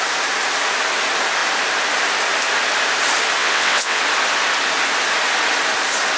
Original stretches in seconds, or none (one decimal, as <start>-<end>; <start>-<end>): 0.0-3.4; 4.0-6.2